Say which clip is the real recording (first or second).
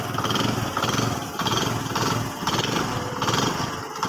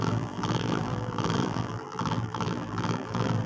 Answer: first